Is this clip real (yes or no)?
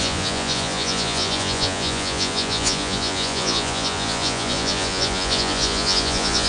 no